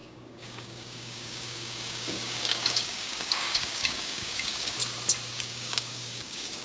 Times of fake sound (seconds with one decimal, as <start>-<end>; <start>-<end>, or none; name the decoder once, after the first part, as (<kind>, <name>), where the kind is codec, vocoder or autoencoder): 0.0-4.8 (codec, DAC); 5.3-6.6